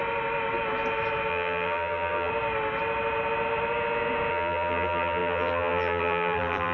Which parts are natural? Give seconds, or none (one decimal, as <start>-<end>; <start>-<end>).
0.0-1.3; 2.3-4.3